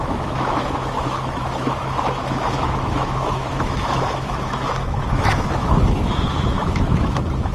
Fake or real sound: fake